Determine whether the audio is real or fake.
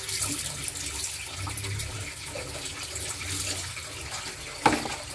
real